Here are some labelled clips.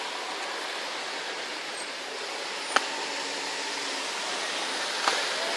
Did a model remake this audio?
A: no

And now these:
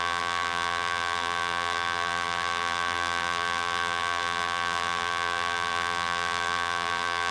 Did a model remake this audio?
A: yes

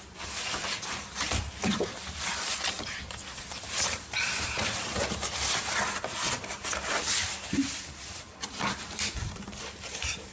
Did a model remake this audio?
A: yes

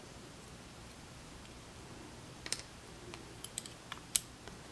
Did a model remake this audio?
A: yes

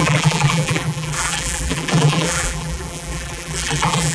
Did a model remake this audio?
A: yes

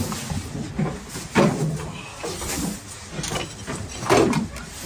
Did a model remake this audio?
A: no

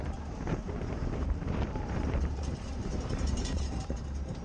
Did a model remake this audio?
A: yes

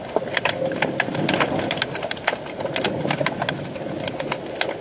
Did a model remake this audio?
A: no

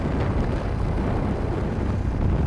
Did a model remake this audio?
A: no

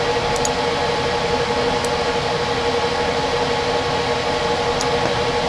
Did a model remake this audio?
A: no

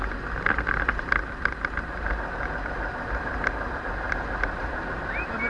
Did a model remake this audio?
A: no